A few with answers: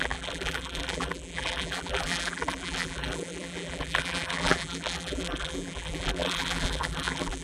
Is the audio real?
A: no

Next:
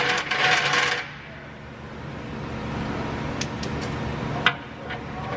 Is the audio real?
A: yes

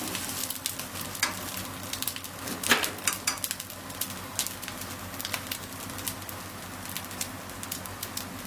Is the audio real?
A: yes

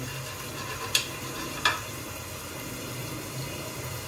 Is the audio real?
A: yes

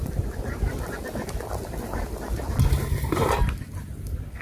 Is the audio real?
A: yes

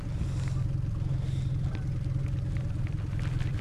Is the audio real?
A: yes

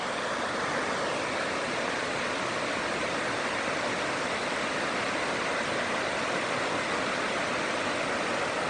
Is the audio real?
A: yes